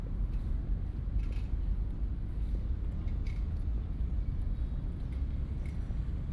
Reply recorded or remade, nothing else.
recorded